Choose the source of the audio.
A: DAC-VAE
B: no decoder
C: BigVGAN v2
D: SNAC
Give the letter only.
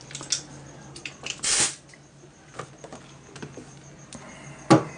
B